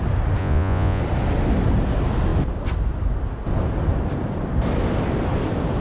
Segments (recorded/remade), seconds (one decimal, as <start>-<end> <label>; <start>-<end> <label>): 0.0-0.4 recorded; 0.4-1.0 remade; 1.0-5.8 recorded